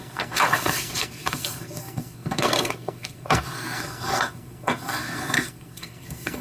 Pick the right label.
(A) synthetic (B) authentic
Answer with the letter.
A